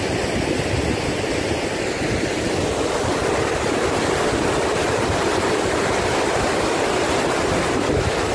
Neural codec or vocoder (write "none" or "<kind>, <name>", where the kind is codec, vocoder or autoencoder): none